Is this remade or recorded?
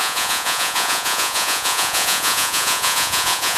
remade